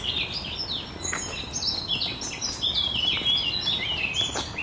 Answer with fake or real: real